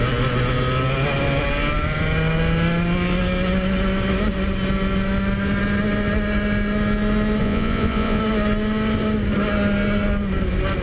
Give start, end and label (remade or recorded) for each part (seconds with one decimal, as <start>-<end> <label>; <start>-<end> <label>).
0.0-7.4 recorded; 7.4-8.2 remade; 8.2-10.8 recorded